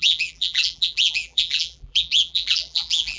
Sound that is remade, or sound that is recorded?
remade